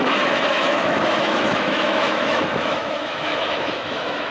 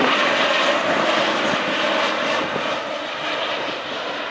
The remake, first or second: first